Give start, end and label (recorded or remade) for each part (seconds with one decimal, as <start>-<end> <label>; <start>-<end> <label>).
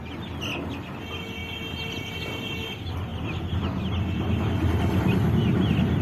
0.0-6.0 recorded